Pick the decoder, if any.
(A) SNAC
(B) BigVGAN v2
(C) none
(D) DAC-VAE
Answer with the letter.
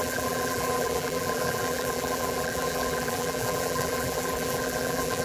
B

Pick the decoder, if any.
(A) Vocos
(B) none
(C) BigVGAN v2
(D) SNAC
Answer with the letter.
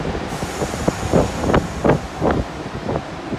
B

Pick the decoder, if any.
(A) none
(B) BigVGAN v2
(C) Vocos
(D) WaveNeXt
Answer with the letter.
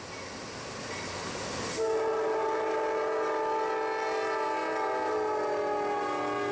A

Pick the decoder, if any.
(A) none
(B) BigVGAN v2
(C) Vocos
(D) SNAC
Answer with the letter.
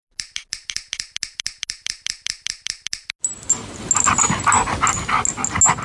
A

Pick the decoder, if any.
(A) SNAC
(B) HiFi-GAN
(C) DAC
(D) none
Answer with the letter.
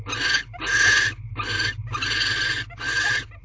D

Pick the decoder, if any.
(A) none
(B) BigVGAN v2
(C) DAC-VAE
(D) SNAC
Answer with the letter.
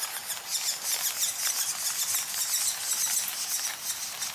A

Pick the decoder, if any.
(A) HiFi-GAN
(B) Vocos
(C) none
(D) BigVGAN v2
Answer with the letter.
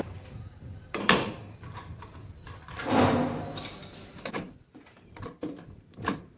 D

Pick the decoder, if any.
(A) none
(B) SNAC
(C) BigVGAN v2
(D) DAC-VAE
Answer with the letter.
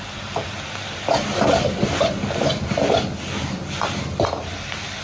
A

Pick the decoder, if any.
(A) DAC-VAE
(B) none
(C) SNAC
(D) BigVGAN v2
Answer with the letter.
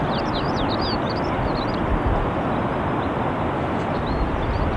B